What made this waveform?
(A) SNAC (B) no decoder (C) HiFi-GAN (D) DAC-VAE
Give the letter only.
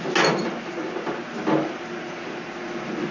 B